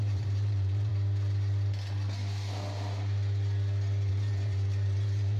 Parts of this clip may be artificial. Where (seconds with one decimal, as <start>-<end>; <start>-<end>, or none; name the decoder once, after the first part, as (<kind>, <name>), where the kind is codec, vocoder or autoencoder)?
0.0-0.9 (vocoder, BigVGAN v2); 4.1-5.4